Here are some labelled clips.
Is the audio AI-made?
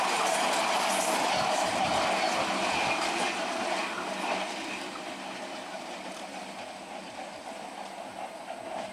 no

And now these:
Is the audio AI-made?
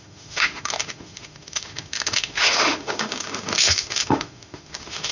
yes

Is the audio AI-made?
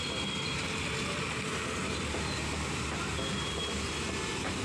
no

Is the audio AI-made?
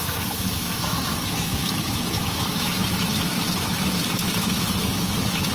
yes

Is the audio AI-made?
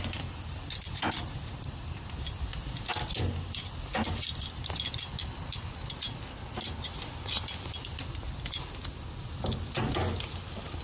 no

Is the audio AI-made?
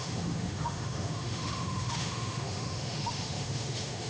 yes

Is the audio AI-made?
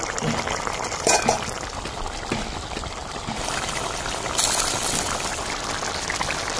no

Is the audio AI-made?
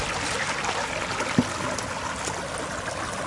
no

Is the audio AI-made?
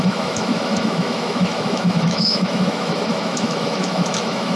yes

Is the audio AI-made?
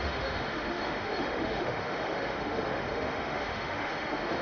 yes